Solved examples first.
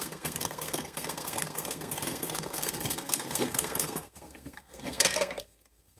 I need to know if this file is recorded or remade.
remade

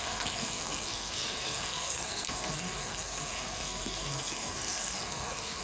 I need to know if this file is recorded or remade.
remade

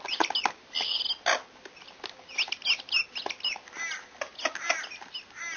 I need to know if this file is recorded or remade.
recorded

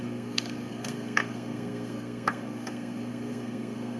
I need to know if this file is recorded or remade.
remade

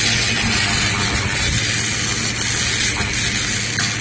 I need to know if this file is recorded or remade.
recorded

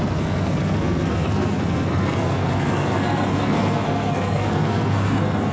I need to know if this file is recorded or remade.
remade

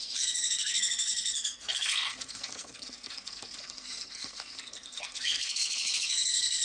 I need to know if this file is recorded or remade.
remade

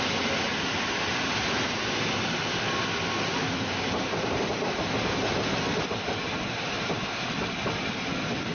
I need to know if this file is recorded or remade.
recorded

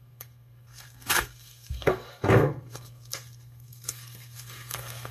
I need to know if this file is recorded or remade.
remade